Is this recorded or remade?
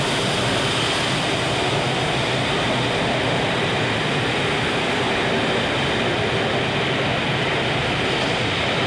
recorded